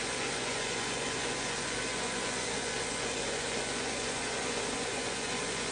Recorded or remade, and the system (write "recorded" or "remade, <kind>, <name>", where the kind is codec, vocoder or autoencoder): remade, vocoder, Vocos